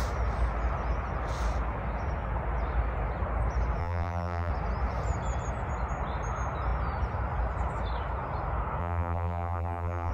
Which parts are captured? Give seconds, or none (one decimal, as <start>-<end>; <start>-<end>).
0.0-3.8; 4.5-8.8